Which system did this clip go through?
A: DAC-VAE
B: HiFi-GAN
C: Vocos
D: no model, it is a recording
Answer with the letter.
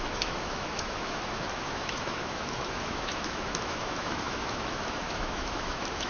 A